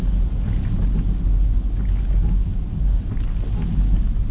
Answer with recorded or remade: recorded